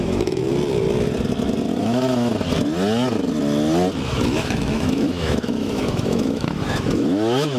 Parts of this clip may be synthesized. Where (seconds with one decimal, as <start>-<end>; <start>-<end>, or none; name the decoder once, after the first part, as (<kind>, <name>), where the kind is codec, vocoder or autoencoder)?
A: 0.0-0.4 (autoencoder, DAC-VAE); 1.8-2.3; 4.1-7.6